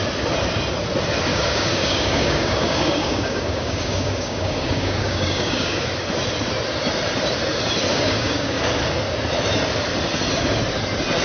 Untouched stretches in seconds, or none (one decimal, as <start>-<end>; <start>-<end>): 0.0-1.3; 5.9-7.9; 8.6-11.2